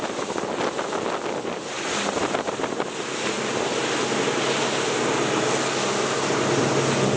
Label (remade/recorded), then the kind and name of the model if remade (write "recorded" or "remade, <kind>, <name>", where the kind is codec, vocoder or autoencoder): recorded